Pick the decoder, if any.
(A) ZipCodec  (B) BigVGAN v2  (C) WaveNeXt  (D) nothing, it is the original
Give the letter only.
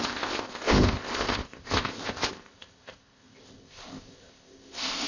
A